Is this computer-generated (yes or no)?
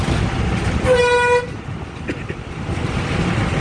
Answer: no